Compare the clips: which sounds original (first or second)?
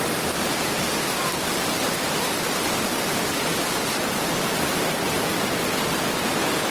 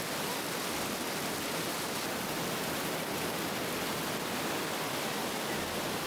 second